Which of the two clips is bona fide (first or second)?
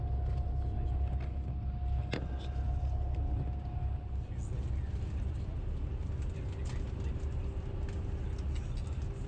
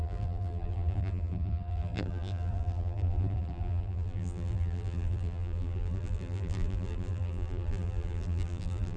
first